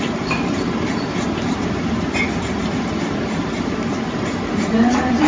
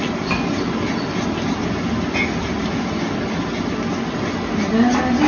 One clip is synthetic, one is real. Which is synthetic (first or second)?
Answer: first